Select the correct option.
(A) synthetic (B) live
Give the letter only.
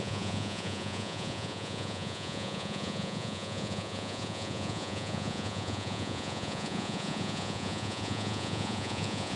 A